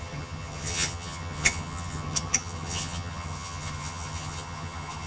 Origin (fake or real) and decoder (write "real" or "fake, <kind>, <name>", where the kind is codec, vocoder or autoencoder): fake, vocoder, HiFi-GAN